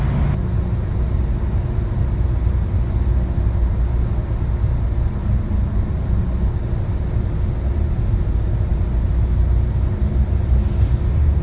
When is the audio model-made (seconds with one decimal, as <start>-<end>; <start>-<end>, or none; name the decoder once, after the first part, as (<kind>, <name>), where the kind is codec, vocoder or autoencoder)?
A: 5.2-6.2 (vocoder, BigVGAN v2)